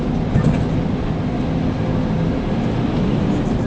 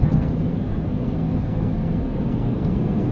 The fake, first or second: second